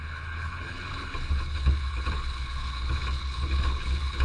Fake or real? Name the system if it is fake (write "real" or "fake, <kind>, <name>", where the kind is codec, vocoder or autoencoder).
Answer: fake, codec, HILCodec